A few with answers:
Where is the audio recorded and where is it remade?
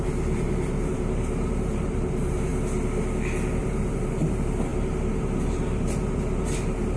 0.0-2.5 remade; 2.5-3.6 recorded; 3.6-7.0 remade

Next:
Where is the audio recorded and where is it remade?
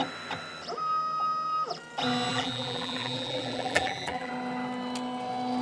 0.0-2.3 recorded; 2.3-4.3 remade; 4.3-5.6 recorded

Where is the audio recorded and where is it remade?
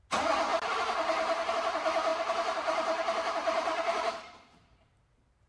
0.0-2.1 recorded; 2.1-5.5 remade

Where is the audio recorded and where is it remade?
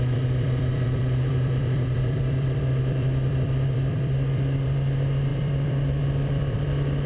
0.0-7.1 remade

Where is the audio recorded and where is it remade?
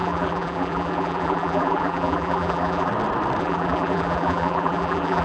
0.0-2.9 remade; 2.9-3.4 recorded; 3.4-5.2 remade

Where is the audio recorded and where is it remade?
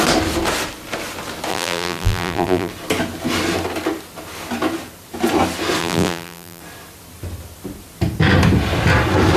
0.0-1.5 recorded; 1.5-2.7 remade; 2.7-5.8 recorded; 5.8-6.6 remade; 6.6-9.4 recorded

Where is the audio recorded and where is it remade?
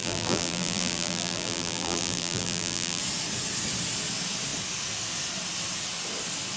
0.0-3.0 remade; 3.0-6.6 recorded